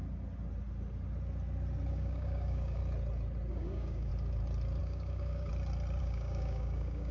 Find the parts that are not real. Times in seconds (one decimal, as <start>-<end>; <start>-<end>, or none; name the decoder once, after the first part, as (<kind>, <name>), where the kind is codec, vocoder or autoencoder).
1.9-2.8 (codec, DAC); 3.5-4.1; 4.8-5.5; 6.0-7.1